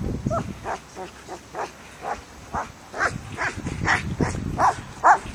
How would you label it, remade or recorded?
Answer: recorded